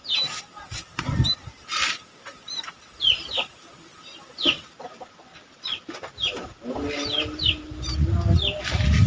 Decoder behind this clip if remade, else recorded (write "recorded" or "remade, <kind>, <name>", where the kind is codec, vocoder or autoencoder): recorded